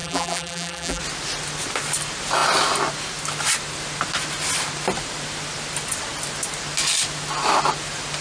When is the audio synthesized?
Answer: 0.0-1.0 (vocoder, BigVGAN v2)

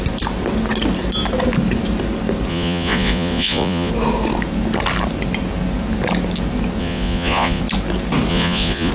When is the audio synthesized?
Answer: 2.5-3.9 (vocoder, Vocos); 6.8-7.6; 8.3-8.9

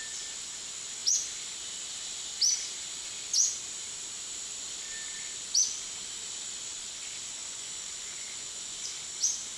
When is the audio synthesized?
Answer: 7.4-8.9 (vocoder, Vocos)